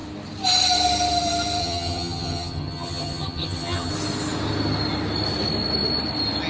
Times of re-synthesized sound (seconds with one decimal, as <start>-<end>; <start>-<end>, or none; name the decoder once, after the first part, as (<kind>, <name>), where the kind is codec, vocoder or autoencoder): 1.6-3.9 (vocoder, HiFi-GAN)